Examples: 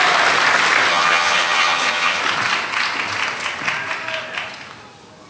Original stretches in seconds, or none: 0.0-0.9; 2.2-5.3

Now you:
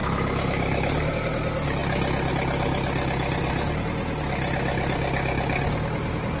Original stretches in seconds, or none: 1.1-6.4

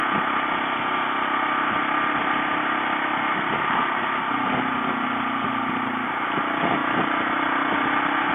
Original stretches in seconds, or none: 0.0-8.3

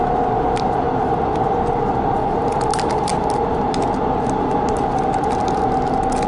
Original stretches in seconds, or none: 0.0-6.3

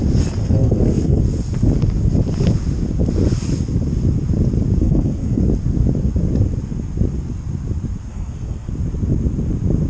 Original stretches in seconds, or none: 0.0-0.4; 1.2-4.8; 5.4-8.1; 8.7-9.9